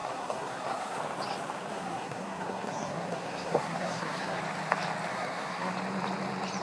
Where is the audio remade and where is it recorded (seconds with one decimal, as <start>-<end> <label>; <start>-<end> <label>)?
0.0-1.0 remade; 1.0-1.7 recorded; 1.7-4.4 remade; 4.4-5.1 recorded; 5.1-5.7 remade; 5.7-6.6 recorded